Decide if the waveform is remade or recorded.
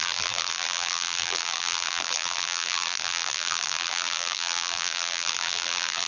remade